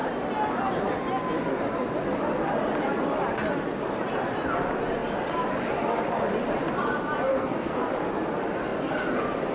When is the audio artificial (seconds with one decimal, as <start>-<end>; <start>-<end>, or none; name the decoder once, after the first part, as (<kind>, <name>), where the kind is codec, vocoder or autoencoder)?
7.3-7.9 (codec, SNAC)